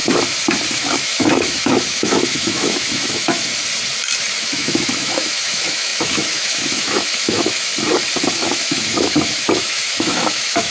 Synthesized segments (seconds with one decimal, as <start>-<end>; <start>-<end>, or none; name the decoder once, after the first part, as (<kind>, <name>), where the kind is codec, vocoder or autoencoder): 0.7-3.5 (autoencoder, DAC-VAE); 4.4-7.7; 8.3-10.7